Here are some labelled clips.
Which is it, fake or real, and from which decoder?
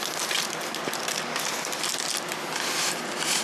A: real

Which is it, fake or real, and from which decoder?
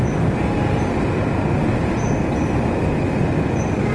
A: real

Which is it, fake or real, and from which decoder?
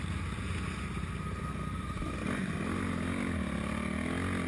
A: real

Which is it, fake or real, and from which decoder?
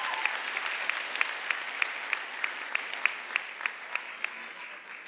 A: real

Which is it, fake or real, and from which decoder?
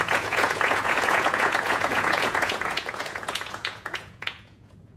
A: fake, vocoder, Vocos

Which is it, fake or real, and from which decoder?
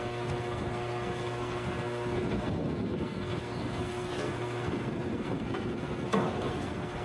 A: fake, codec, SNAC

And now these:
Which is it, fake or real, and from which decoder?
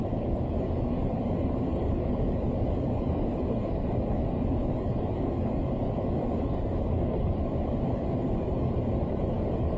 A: fake, codec, DAC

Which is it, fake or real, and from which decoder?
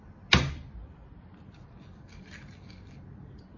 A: real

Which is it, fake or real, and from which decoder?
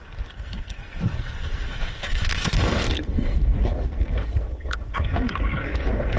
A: fake, codec, SNAC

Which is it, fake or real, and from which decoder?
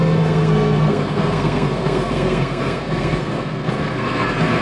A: fake, codec, SNAC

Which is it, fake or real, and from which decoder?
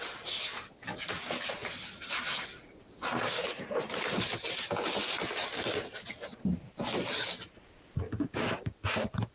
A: real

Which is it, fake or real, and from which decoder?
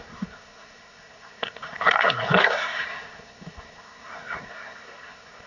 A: fake, codec, SNAC